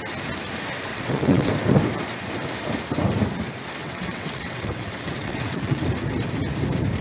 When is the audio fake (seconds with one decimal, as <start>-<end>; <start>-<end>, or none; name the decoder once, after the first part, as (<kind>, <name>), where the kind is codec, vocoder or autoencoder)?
0.9-1.5 (vocoder, WaveNeXt); 3.8-5.8